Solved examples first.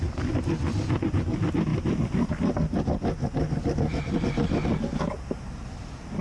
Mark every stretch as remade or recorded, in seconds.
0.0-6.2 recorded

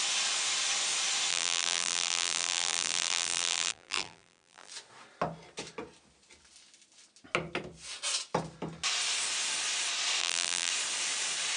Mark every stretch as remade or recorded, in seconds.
0.0-1.3 recorded; 1.3-4.7 remade; 4.7-10.2 recorded; 10.2-10.7 remade; 10.7-11.6 recorded

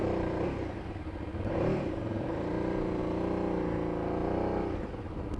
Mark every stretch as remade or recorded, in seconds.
0.0-3.0 remade; 3.0-5.4 recorded

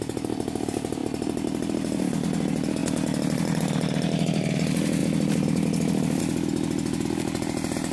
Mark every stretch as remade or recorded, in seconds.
0.0-5.0 recorded; 5.0-6.2 remade; 6.2-7.9 recorded